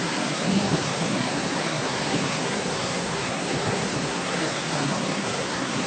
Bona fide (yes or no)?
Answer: no